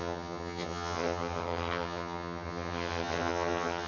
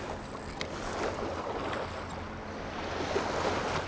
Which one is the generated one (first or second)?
first